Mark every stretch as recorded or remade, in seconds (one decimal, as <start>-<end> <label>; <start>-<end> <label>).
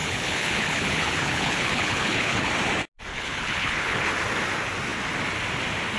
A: 0.0-2.5 remade; 2.5-3.1 recorded; 3.1-4.1 remade; 4.1-6.0 recorded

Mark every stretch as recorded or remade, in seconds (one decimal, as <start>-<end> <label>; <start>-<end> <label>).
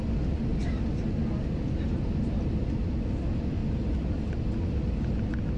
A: 0.0-5.6 recorded